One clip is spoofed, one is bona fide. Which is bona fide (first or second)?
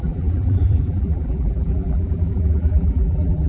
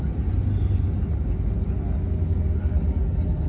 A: second